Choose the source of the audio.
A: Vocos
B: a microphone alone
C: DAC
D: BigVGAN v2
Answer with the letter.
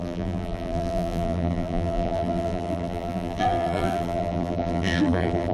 D